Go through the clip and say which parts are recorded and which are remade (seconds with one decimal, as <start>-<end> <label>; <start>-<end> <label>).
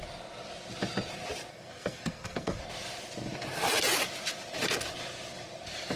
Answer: 0.0-1.5 recorded; 1.5-2.6 remade; 2.6-6.0 recorded